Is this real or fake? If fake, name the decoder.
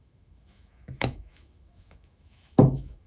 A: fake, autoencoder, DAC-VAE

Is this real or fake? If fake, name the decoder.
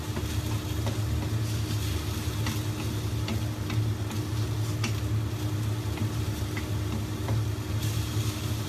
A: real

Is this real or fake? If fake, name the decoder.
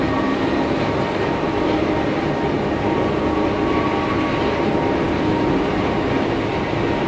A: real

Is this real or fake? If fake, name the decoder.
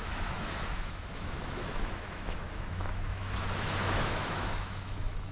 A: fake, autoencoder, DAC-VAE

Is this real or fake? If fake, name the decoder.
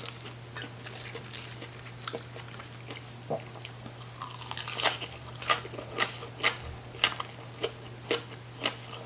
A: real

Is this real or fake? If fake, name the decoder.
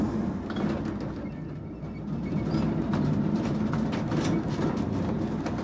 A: real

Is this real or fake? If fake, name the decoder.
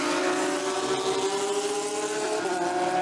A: real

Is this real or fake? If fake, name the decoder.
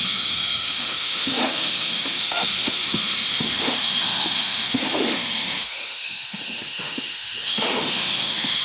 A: fake, autoencoder, DAC-VAE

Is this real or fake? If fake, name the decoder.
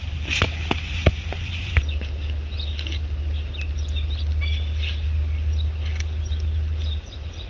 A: real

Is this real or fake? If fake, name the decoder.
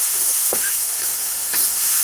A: fake, autoencoder, DAC-VAE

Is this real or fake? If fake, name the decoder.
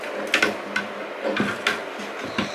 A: real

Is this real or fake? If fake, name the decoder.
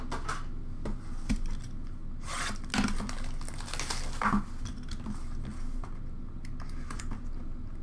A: real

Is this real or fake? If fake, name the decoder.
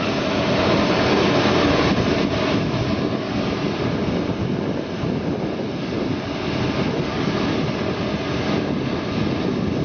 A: real